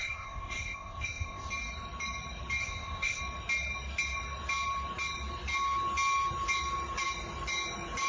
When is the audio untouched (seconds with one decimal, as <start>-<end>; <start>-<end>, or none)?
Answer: 1.5-2.6; 3.2-8.1